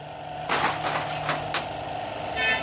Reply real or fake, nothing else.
real